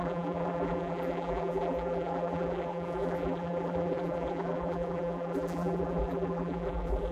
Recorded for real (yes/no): no